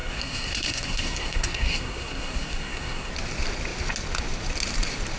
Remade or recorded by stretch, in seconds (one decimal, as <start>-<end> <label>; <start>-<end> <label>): 0.0-3.1 remade; 3.1-5.2 recorded